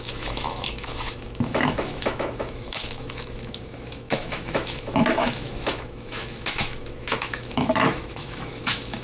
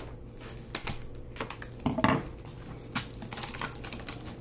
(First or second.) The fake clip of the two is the first